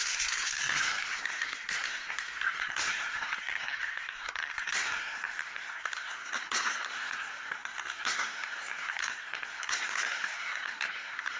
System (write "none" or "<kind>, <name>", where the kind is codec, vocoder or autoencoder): codec, SNAC